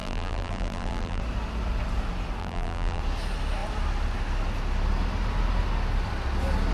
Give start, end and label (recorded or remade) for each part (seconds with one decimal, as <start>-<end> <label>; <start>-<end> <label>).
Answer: 0.0-1.2 remade; 1.2-2.4 recorded; 2.4-3.0 remade; 3.0-6.7 recorded